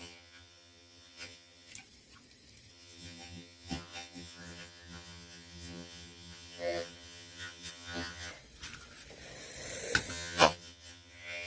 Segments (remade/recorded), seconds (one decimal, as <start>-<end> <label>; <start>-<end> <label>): 0.0-1.7 remade; 1.7-2.7 recorded; 2.7-8.3 remade; 8.3-10.1 recorded; 10.1-11.5 remade